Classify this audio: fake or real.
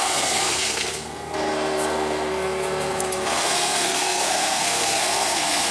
fake